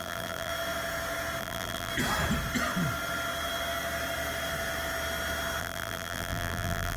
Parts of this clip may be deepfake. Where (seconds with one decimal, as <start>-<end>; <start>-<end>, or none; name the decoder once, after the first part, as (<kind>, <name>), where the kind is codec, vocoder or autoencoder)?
0.0-0.5 (vocoder, BigVGAN v2); 1.4-1.9; 5.6-7.0